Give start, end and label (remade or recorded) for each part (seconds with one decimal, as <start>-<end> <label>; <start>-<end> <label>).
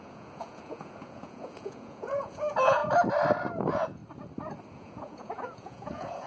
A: 0.0-2.8 remade; 2.8-3.5 recorded; 3.5-4.0 remade; 4.0-4.7 recorded; 4.7-6.3 remade